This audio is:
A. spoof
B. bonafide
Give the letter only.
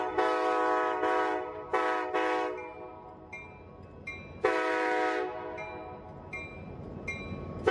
B